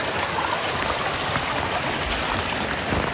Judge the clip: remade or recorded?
recorded